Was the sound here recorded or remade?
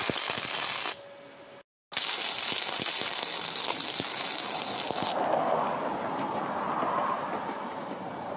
recorded